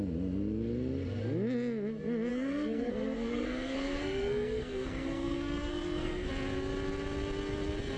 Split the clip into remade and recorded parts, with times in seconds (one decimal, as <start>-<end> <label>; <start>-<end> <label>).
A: 0.0-2.3 recorded; 2.3-6.3 remade; 6.3-8.0 recorded